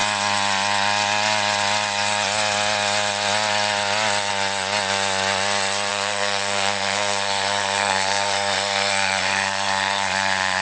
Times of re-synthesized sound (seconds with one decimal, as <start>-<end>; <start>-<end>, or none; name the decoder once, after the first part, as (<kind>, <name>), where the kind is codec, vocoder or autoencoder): 5.9-10.6 (codec, SNAC)